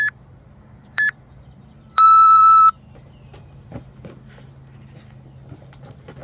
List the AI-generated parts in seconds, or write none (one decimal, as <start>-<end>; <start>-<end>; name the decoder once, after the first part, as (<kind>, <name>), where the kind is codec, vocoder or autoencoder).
0.8-4.5 (vocoder, BigVGAN v2)